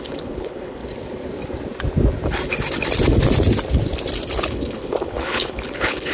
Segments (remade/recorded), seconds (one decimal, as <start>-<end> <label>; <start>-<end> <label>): 0.0-0.8 remade; 0.8-4.5 recorded; 4.5-6.1 remade